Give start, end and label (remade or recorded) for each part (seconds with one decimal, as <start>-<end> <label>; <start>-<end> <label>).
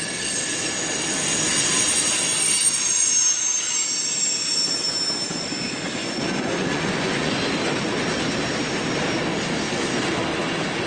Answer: 0.0-6.0 recorded; 6.0-7.3 remade; 7.3-10.9 recorded